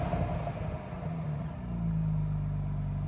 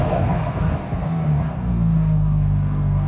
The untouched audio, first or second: first